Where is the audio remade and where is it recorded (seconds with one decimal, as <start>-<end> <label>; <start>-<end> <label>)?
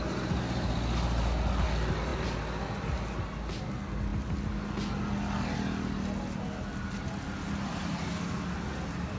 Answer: 0.0-9.2 recorded